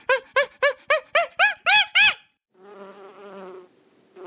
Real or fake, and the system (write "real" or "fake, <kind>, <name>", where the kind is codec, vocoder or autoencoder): real